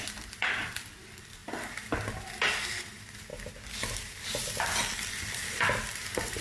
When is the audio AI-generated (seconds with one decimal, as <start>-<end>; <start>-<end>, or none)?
0.0-1.4; 2.5-3.3; 4.0-6.4